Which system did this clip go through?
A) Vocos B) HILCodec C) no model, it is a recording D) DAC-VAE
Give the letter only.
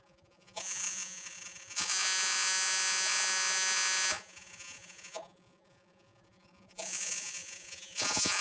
A